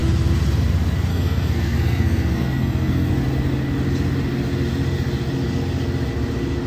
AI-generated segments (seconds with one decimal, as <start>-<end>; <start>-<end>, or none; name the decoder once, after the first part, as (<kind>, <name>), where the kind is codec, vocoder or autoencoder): 1.1-3.1 (codec, SNAC)